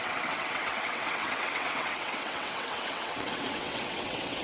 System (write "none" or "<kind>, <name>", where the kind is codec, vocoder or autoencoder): vocoder, WaveNeXt